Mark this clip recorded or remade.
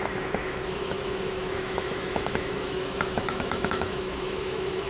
remade